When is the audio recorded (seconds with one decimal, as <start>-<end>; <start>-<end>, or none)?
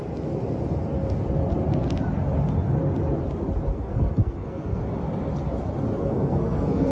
0.0-3.7; 4.8-6.0